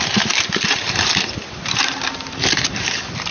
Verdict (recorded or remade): remade